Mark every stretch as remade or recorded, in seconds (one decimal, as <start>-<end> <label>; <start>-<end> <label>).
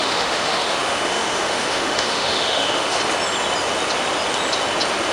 0.0-3.0 remade; 3.0-5.1 recorded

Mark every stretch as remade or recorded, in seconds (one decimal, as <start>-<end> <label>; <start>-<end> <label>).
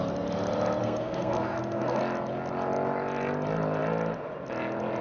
0.0-0.8 recorded; 0.8-2.0 remade; 2.0-5.0 recorded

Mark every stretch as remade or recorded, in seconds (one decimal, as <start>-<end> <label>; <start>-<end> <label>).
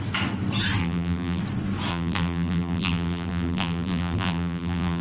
0.0-0.8 recorded; 0.8-1.4 remade; 1.4-1.9 recorded; 1.9-5.0 remade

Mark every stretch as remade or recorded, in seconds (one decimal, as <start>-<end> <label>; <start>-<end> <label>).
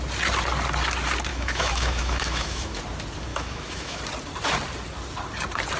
0.0-1.3 recorded; 1.3-2.8 remade; 2.8-3.3 recorded; 3.3-4.0 remade; 4.0-5.8 recorded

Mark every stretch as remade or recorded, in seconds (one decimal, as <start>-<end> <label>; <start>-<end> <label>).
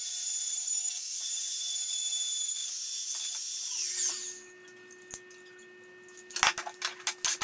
0.0-0.6 recorded; 0.6-1.2 remade; 1.2-7.4 recorded